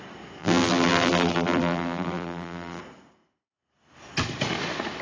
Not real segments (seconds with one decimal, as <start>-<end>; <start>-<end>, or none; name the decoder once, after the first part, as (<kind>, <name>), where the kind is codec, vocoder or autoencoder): 0.4-2.8 (vocoder, BigVGAN v2)